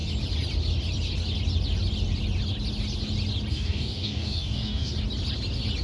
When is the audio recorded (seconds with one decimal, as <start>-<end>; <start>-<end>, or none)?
0.0-3.5; 4.9-5.8